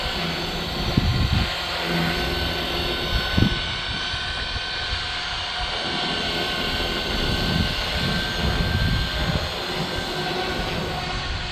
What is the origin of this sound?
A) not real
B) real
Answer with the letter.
B